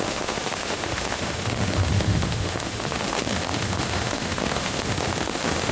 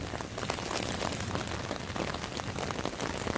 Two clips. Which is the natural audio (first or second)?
second